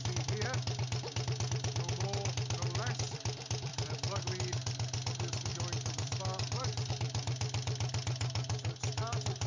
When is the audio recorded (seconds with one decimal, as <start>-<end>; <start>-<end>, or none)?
0.0-3.7; 4.2-5.5; 6.9-9.5